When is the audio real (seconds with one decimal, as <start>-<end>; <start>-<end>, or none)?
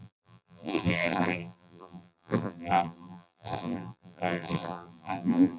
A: none